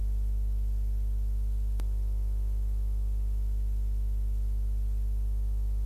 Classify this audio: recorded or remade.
recorded